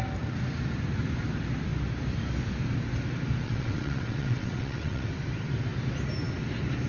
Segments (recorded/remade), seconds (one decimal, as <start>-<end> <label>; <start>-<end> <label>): 0.0-3.4 recorded; 3.4-5.1 remade; 5.1-6.9 recorded